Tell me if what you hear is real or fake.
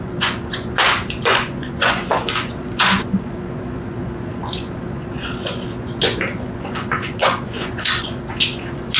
fake